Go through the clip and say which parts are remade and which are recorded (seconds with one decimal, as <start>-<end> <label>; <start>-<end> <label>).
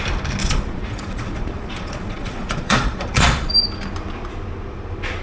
0.0-0.4 recorded; 0.4-3.5 remade; 3.5-5.2 recorded